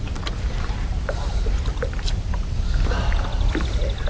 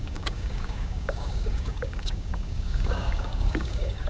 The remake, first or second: second